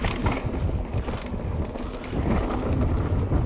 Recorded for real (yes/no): yes